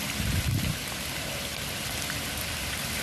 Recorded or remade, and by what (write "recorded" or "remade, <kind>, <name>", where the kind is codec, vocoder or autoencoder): recorded